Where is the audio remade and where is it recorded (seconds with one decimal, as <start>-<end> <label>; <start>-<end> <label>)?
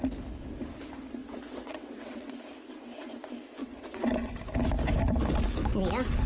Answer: 0.0-1.2 recorded; 1.2-2.3 remade; 2.3-3.6 recorded; 3.6-4.3 remade; 4.3-6.3 recorded